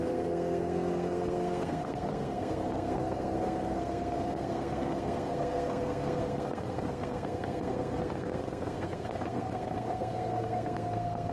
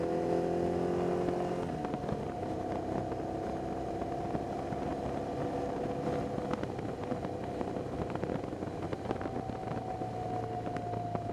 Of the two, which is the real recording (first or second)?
second